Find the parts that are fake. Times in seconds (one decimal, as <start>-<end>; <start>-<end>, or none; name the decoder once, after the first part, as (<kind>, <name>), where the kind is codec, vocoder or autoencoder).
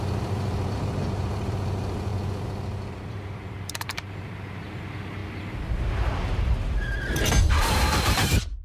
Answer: 0.0-2.1 (vocoder, BigVGAN v2); 3.1-5.2; 7.5-8.6